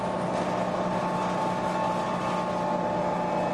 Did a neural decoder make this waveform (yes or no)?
no